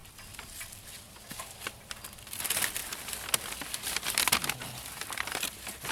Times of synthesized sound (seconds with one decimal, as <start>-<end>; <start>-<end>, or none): 0.0-1.9